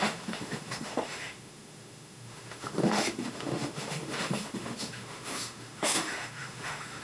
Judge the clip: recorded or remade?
remade